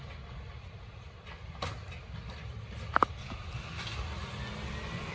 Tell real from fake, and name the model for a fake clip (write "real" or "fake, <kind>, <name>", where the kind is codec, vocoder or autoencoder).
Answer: real